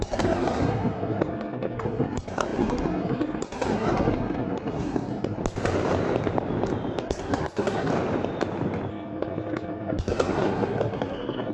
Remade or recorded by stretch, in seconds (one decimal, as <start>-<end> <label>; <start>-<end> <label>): 0.0-5.4 remade; 5.4-7.0 recorded; 7.0-7.9 remade; 7.9-8.9 recorded; 8.9-11.5 remade